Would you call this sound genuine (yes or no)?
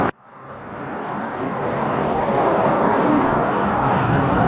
no